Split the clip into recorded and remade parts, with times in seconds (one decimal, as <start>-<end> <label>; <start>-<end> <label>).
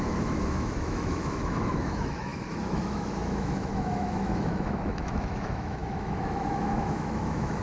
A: 0.0-7.6 remade